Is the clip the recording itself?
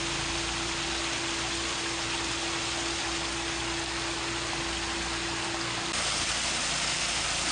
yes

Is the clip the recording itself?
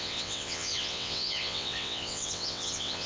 no